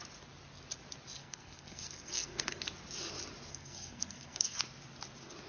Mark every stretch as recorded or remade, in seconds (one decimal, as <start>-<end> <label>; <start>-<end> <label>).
0.0-1.2 recorded; 1.2-2.6 remade; 2.6-3.5 recorded; 3.5-4.6 remade; 4.6-5.5 recorded